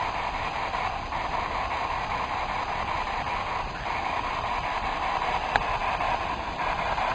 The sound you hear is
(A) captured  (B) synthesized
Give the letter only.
A